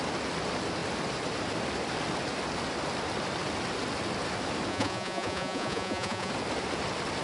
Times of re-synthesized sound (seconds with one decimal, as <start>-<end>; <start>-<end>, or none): 4.7-6.3